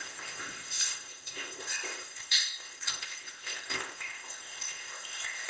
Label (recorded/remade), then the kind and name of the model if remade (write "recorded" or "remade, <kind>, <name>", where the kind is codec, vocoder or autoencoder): remade, codec, ZipCodec